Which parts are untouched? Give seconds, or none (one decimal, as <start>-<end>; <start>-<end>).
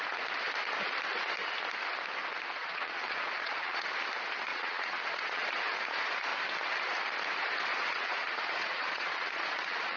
0.0-2.6; 3.9-4.5; 5.5-7.7